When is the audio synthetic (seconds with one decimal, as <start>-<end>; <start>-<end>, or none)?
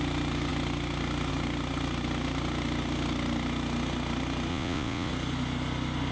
4.5-5.1